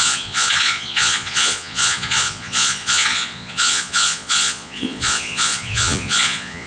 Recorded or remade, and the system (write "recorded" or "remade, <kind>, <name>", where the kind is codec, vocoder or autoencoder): remade, vocoder, Vocos